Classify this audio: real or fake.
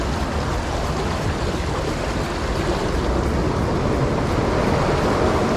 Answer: real